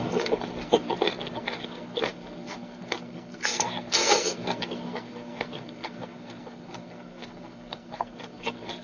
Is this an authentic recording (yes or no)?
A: no